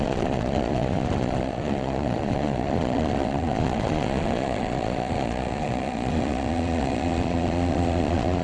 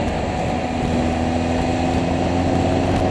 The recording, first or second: second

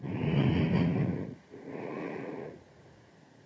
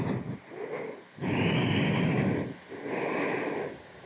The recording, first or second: second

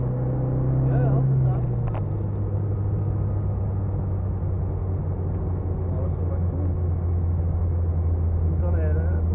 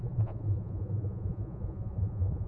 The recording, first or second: first